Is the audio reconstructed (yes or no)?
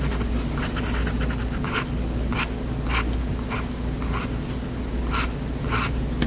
no